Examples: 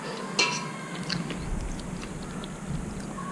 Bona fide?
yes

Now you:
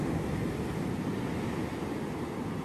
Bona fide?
yes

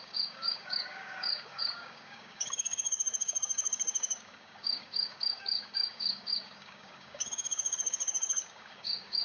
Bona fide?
no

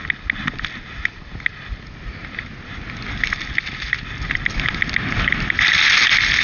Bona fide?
yes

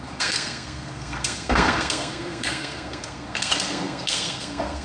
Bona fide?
no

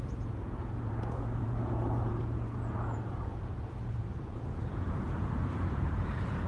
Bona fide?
no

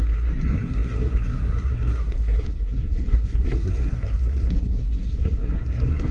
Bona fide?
no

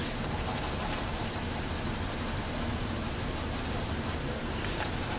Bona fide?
no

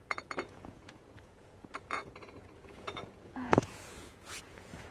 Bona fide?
no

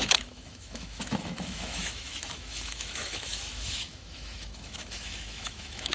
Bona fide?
no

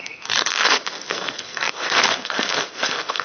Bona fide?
no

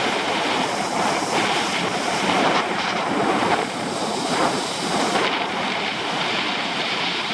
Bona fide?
no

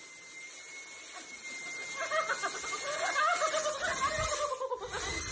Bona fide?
yes